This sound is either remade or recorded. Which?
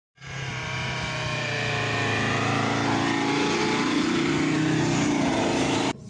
recorded